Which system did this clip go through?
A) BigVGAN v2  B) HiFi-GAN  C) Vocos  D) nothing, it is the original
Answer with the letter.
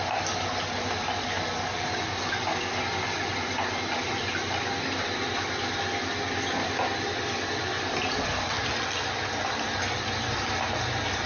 D